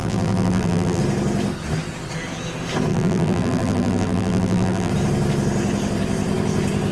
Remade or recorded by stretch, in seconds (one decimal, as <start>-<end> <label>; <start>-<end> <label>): 0.0-1.0 remade; 1.0-2.9 recorded; 2.9-4.9 remade; 4.9-6.9 recorded